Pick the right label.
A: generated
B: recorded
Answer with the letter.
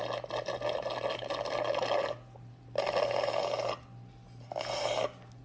B